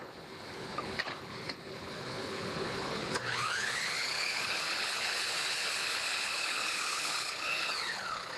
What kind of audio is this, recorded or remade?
remade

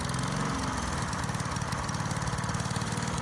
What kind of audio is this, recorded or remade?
recorded